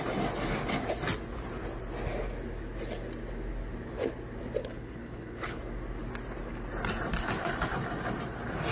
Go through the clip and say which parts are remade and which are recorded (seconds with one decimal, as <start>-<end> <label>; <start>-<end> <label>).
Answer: 0.0-4.6 recorded; 4.6-5.6 remade; 5.6-8.7 recorded